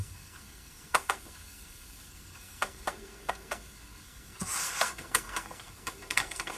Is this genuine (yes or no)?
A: no